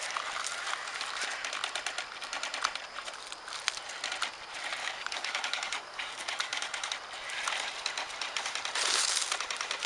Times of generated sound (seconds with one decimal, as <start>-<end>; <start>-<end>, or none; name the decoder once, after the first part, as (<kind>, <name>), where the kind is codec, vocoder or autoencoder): 4.8-6.9 (codec, DAC)